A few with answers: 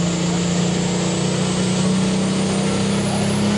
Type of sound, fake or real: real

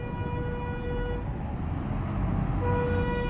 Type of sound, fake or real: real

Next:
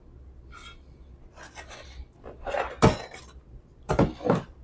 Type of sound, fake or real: real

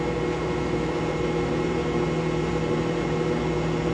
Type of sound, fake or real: fake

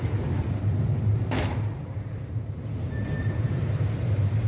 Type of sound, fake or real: fake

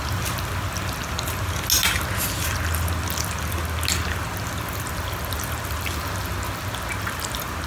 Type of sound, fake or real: real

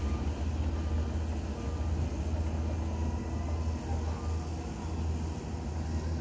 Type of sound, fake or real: real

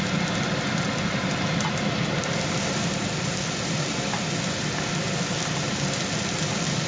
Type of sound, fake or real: real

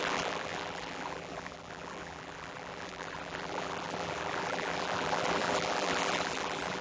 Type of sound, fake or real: fake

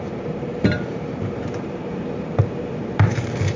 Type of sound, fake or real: fake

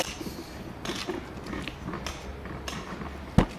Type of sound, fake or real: real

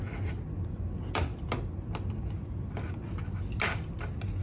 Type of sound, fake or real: real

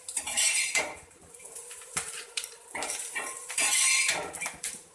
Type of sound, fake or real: fake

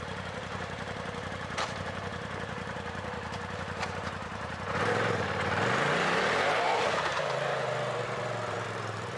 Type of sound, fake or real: fake